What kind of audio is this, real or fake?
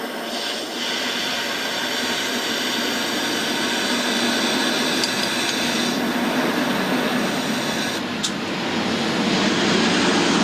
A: real